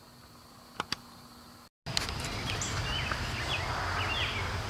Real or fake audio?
real